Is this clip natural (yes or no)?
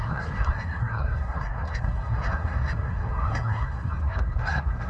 no